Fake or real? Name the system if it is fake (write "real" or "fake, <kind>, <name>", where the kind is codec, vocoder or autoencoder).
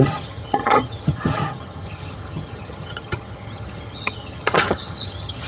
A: fake, vocoder, HiFi-GAN